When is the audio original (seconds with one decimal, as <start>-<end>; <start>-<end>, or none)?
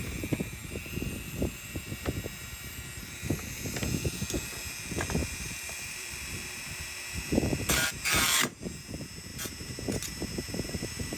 0.0-5.2; 8.7-9.3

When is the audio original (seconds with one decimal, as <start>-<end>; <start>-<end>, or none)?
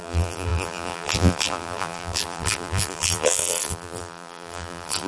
none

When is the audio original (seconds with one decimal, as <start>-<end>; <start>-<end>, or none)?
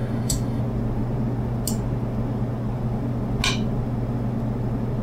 0.6-5.0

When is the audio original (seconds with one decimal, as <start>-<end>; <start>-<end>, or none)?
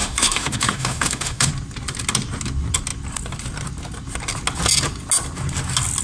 1.5-6.0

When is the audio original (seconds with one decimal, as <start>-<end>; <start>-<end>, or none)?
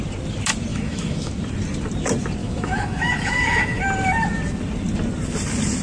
0.0-0.7; 1.3-2.4; 3.8-5.8